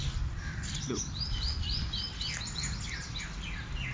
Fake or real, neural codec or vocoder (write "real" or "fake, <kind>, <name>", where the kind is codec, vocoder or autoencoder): real